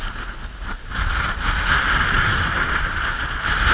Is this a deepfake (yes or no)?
no